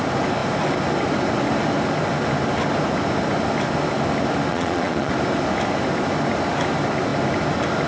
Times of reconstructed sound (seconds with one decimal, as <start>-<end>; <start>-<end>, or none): 4.5-5.1